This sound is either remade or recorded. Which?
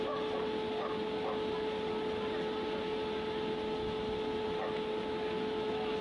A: recorded